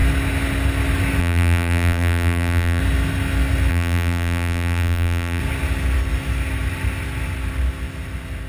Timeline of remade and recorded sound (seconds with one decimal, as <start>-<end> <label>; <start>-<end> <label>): 0.0-1.2 recorded; 1.2-2.8 remade; 2.8-3.7 recorded; 3.7-5.4 remade; 5.4-8.5 recorded